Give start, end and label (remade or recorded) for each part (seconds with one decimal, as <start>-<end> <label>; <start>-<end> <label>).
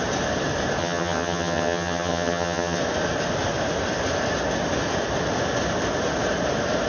0.0-0.8 recorded; 0.8-2.8 remade; 2.8-6.9 recorded